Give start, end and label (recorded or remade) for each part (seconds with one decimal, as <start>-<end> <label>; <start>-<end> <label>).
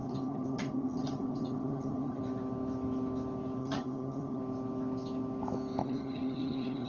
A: 0.0-2.2 remade; 2.2-3.6 recorded; 3.6-4.4 remade; 4.4-5.8 recorded; 5.8-6.9 remade